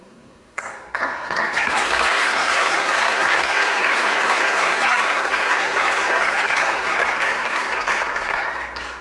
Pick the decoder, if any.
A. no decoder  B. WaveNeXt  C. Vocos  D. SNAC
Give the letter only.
D